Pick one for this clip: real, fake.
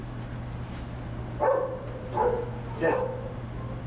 real